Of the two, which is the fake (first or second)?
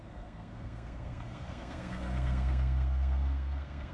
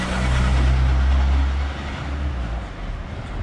first